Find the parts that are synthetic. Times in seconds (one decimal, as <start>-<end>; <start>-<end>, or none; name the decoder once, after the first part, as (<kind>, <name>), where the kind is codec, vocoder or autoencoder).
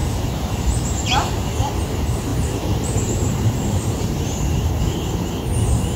0.0-1.3 (vocoder, BigVGAN v2); 2.3-4.7